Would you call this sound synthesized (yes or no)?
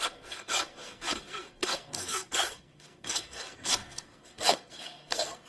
yes